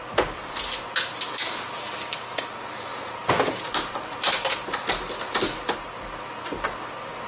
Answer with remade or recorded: recorded